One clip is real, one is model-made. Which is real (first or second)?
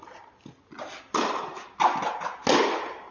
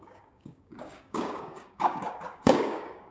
first